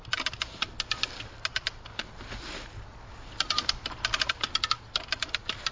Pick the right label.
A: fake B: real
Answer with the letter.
B